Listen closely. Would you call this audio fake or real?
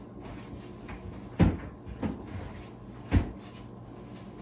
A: real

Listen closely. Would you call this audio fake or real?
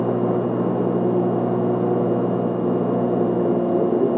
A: real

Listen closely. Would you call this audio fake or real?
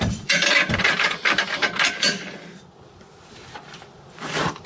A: fake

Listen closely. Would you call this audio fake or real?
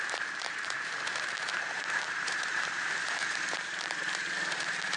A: fake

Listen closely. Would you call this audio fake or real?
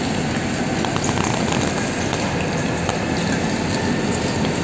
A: real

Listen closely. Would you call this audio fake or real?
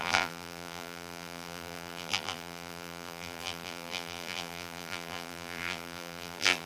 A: fake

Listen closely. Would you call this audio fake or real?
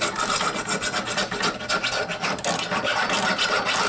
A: real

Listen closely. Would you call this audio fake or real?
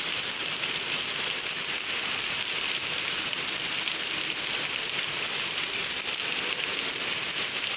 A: real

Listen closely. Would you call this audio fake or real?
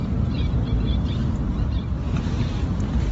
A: fake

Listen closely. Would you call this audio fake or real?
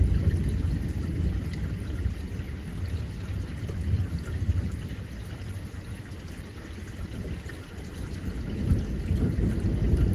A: real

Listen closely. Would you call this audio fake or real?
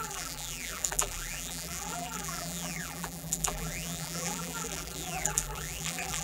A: fake